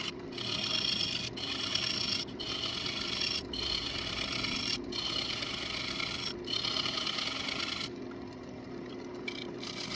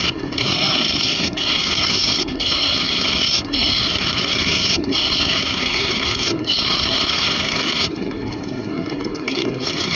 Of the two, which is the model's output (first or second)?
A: second